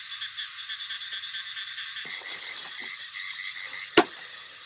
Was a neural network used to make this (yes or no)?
no